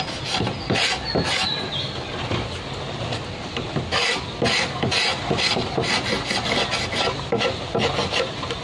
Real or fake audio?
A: real